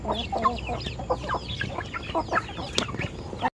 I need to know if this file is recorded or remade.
recorded